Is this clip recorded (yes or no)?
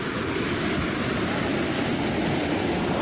yes